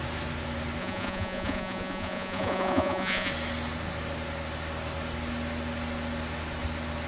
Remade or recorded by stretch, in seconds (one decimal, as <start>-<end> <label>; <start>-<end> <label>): 0.0-0.8 recorded; 0.8-3.3 remade; 3.3-7.1 recorded